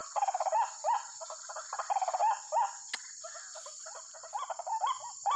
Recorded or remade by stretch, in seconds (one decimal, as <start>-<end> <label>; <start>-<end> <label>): 0.0-2.2 remade; 2.2-3.5 recorded; 3.5-5.4 remade